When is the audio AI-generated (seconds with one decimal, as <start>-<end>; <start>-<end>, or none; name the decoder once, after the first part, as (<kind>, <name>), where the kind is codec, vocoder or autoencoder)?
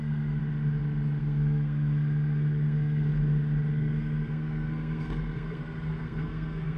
0.0-0.4 (codec, SNAC); 1.2-3.1; 3.7-6.8